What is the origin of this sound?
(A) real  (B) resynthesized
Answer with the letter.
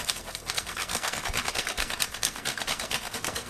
B